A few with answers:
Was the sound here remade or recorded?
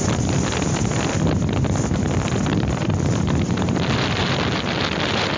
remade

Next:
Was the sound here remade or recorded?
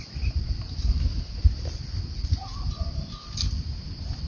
recorded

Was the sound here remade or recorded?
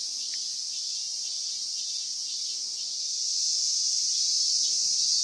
recorded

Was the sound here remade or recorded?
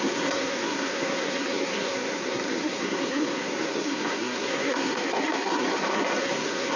remade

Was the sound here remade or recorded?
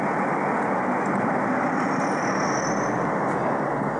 recorded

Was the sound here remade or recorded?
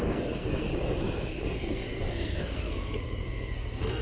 remade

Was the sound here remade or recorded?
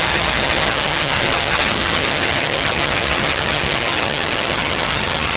remade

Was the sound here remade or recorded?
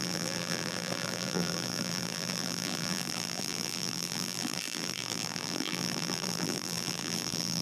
remade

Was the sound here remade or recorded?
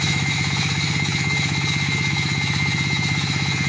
remade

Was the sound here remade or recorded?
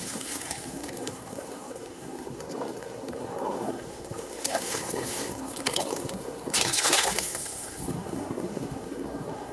remade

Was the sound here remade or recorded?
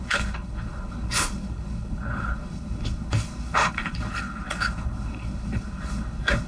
remade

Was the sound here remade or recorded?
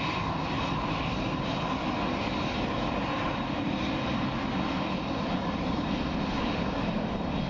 recorded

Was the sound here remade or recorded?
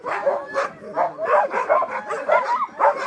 recorded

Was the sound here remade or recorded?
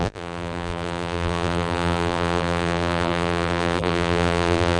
remade